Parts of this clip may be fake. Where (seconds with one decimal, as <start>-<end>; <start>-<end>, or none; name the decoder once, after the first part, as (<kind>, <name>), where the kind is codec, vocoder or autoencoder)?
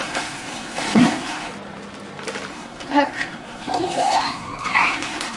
0.0-1.5 (codec, SNAC); 2.5-5.4